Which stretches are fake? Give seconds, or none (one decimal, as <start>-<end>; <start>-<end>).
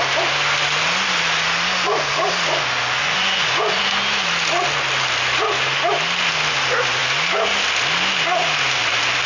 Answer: 3.0-3.8